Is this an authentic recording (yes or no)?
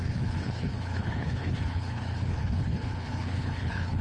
no